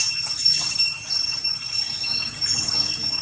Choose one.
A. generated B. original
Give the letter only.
B